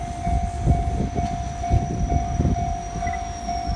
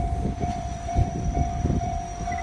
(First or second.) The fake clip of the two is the second